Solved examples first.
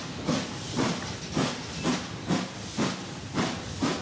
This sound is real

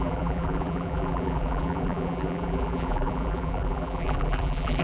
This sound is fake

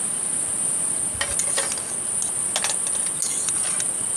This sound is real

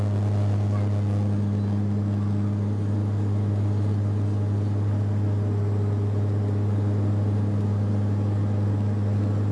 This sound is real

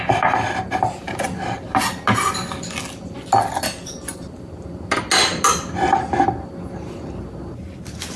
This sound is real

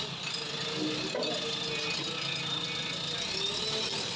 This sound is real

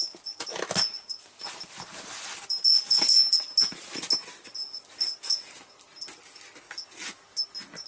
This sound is real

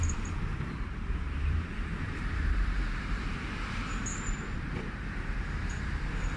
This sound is fake